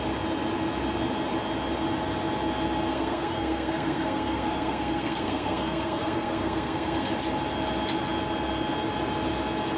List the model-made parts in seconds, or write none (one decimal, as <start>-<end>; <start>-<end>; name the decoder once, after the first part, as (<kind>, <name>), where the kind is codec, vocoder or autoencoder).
2.9-7.1 (codec, SNAC)

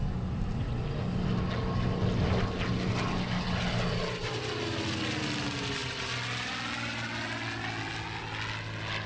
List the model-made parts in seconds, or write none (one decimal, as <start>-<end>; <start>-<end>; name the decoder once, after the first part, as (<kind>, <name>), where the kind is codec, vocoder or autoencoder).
none

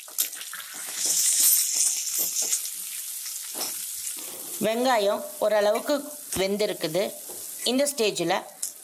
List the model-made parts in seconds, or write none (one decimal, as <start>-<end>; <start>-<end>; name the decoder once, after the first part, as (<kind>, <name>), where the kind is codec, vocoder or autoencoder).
0.8-1.5 (autoencoder, DAC-VAE)

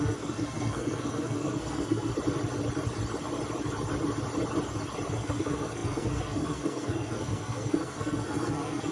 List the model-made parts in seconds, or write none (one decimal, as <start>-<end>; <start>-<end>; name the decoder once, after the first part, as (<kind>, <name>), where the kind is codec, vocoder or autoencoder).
0.0-2.1 (codec, SNAC); 5.1-8.9

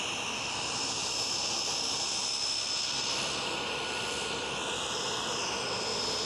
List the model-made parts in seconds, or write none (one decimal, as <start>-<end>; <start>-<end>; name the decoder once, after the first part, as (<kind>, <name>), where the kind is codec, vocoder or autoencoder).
1.0-4.7 (vocoder, BigVGAN v2)